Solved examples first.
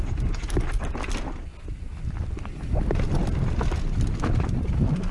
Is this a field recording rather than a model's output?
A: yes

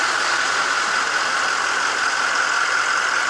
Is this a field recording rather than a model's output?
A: yes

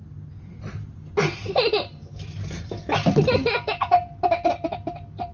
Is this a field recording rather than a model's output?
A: yes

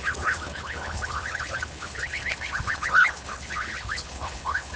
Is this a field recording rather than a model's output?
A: no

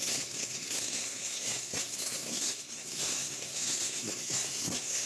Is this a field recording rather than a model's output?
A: no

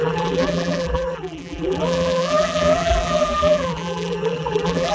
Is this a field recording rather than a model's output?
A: no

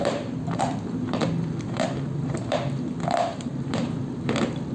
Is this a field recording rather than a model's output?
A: no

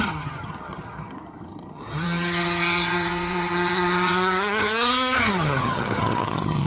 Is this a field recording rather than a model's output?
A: no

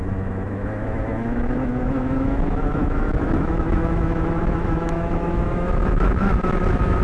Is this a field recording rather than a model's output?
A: no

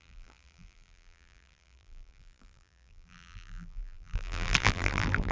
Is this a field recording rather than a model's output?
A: no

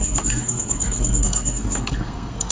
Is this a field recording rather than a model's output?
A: no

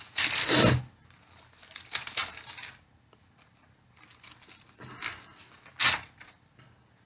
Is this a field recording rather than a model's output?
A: yes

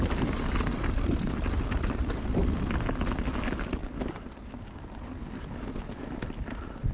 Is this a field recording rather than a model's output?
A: yes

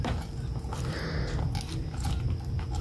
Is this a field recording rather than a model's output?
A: yes